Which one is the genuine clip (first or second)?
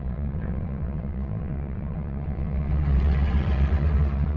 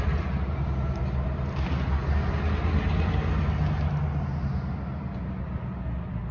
second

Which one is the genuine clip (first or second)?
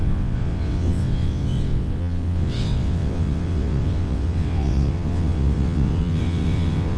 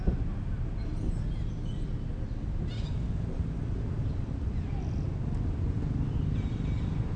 second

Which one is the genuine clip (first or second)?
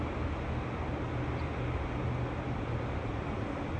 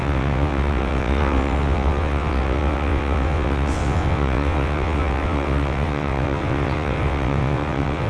first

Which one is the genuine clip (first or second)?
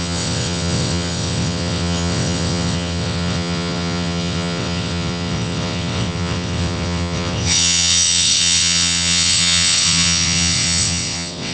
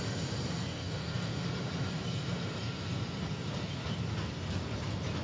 second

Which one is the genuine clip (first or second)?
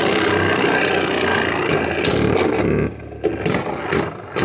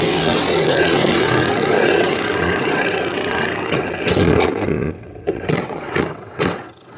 first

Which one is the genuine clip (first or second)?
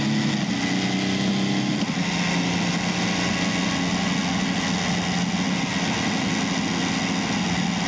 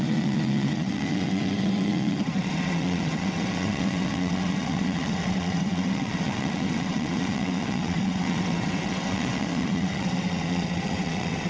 first